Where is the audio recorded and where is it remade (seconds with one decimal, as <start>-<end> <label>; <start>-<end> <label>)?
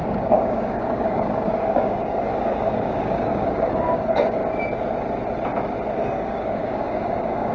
0.0-4.4 remade; 4.4-5.9 recorded; 5.9-7.5 remade